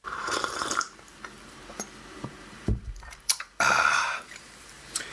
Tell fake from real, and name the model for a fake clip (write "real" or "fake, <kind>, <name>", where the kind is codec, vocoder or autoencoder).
fake, vocoder, BigVGAN v2